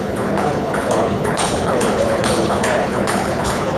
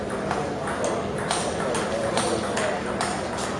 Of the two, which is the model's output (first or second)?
first